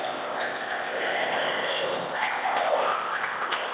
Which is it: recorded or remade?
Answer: remade